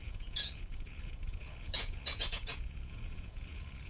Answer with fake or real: fake